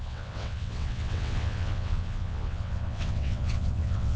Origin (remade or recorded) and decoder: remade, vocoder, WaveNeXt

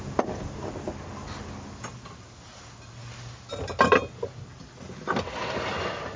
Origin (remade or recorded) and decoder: recorded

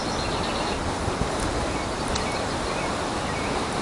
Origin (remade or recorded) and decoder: recorded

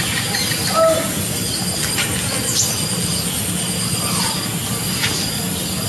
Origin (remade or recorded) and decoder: recorded